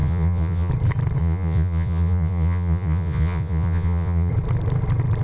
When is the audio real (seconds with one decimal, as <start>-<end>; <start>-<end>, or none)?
0.7-1.2; 4.3-5.2